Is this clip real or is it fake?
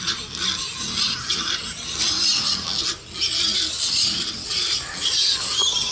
real